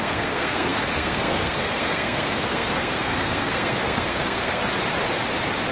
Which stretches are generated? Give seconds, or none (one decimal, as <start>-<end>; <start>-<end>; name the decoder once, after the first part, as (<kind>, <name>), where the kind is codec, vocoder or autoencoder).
0.0-4.6 (codec, SNAC)